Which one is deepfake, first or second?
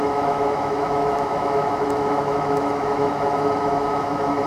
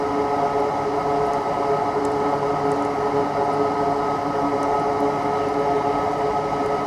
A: first